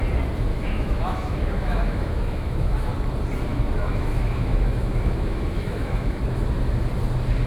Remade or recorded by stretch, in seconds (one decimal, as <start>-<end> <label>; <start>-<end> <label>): 0.0-0.5 recorded; 0.5-2.9 remade; 2.9-3.5 recorded; 3.5-6.2 remade; 6.2-7.5 recorded